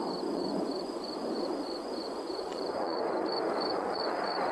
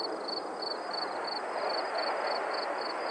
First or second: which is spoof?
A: first